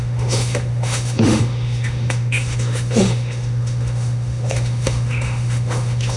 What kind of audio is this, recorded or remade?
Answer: remade